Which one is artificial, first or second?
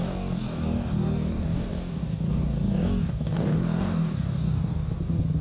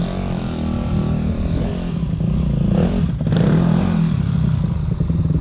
first